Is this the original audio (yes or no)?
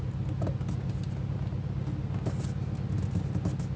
yes